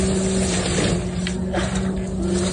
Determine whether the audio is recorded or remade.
recorded